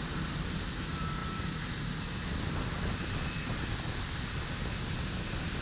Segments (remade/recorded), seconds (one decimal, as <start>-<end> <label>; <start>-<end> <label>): 0.0-5.6 recorded